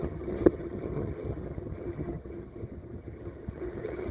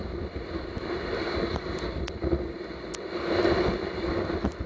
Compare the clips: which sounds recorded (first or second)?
second